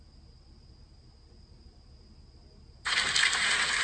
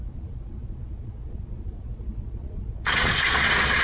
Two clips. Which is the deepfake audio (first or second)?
second